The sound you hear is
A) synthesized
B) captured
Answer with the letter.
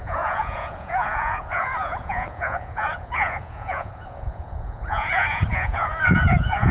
A